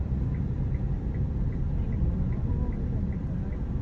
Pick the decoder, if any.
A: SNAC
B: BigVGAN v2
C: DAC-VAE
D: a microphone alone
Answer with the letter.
B